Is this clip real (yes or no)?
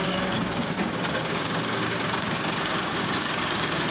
no